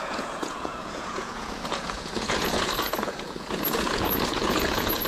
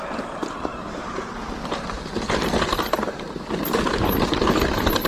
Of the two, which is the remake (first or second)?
first